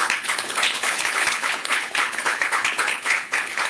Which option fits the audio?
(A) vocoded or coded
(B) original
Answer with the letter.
A